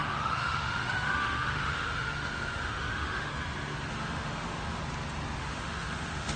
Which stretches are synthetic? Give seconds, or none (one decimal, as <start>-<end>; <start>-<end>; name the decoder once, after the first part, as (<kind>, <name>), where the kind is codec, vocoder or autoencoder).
0.0-3.3 (autoencoder, DAC-VAE); 3.9-4.8; 5.4-6.4